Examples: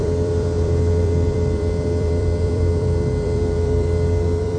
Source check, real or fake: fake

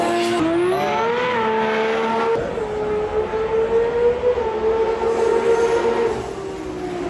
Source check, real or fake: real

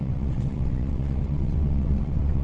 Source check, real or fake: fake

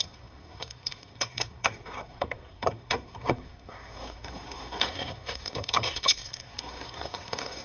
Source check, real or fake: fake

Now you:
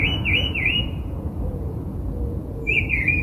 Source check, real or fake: fake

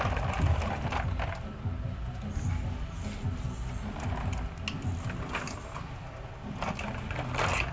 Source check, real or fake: real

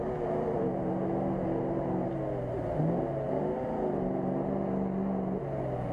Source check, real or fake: real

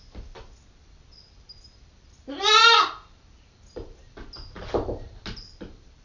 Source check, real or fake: real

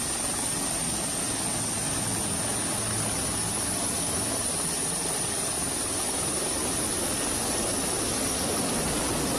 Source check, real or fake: real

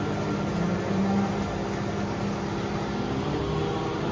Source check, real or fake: real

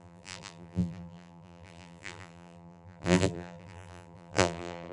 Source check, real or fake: fake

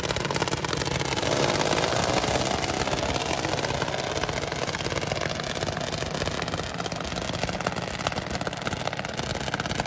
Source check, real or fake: real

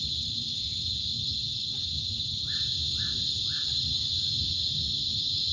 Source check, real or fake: real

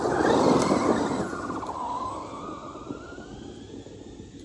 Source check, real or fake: real